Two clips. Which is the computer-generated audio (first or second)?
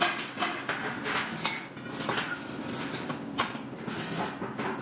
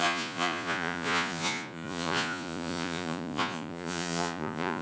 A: second